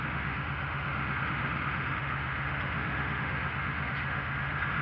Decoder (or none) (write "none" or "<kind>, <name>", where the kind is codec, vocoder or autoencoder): autoencoder, DAC-VAE